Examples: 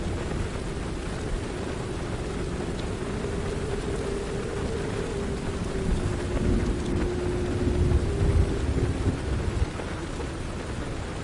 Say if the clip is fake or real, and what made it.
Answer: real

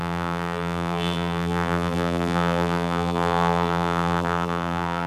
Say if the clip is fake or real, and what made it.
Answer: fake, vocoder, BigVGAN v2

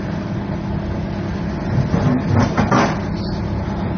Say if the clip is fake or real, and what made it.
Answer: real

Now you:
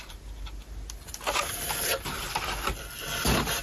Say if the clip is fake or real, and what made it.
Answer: real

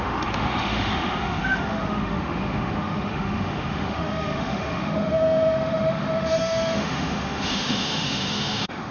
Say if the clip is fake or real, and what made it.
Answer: fake, autoencoder, DAC-VAE